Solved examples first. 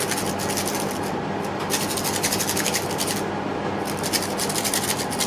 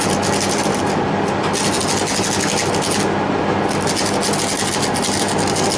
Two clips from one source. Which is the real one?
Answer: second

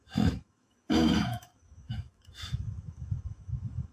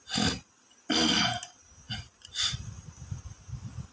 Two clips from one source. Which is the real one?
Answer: second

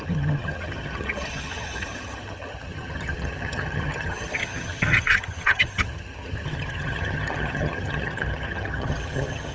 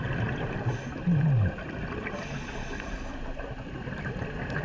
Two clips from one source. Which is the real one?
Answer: second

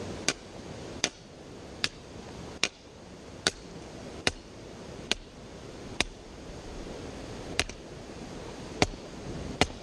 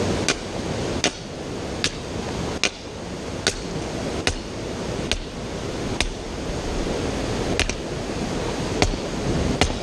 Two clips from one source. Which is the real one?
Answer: second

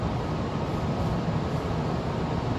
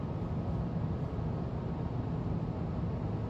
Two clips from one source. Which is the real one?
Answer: second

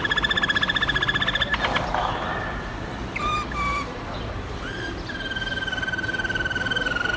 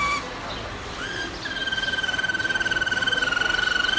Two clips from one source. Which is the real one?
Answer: second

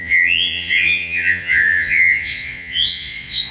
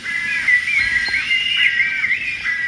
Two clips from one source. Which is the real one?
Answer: second